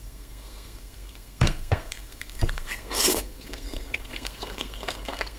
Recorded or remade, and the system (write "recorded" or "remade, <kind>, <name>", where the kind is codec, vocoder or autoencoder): remade, codec, SNAC